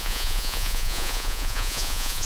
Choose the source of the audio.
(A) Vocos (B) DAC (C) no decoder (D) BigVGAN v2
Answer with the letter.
A